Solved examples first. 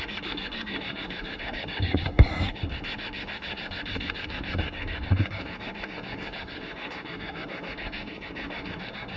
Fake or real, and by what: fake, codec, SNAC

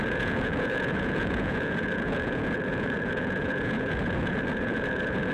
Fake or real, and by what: fake, vocoder, Vocos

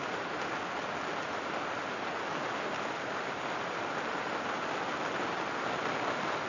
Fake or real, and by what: real